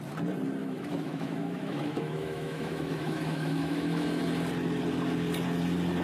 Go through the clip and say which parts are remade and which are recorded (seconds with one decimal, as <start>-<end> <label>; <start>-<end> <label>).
0.0-0.6 recorded; 0.6-4.2 remade; 4.2-6.0 recorded